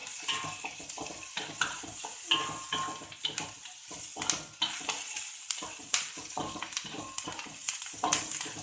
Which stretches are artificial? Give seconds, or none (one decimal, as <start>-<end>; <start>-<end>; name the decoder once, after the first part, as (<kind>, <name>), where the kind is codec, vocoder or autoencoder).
7.6-8.2 (vocoder, BigVGAN v2)

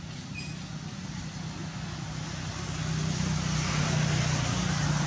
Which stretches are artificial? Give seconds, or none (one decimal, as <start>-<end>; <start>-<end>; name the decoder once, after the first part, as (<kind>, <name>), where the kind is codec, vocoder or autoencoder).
none